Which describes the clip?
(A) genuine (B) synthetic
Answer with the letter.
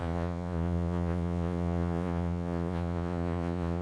B